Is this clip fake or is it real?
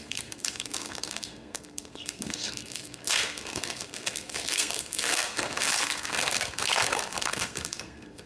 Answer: fake